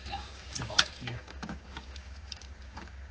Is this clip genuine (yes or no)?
no